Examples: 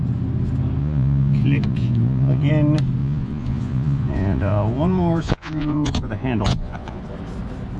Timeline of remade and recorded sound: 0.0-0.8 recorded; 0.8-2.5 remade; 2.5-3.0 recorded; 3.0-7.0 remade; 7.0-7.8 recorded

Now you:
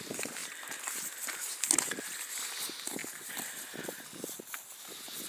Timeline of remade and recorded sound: 0.0-5.3 recorded